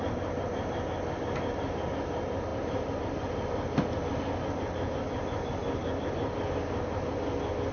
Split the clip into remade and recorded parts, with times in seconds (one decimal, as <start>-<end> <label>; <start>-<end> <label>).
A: 0.0-7.7 recorded